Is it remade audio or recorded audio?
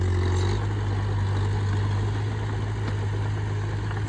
recorded